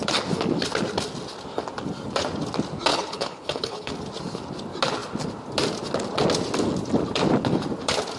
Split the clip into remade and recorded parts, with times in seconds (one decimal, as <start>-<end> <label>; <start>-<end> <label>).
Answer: 0.0-2.9 recorded; 2.9-3.9 remade; 3.9-8.2 recorded